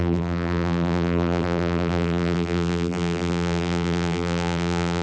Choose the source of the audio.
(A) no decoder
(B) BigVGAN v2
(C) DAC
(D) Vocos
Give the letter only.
B